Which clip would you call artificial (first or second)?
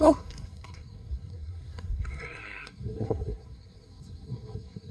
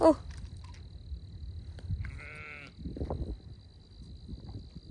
first